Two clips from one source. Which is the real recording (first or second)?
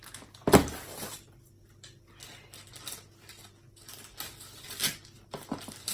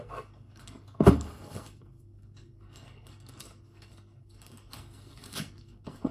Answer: first